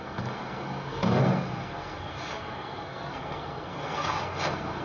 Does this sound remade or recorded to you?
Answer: remade